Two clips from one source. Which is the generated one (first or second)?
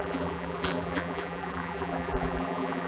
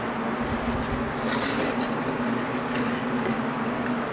first